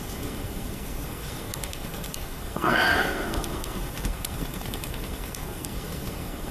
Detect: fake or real fake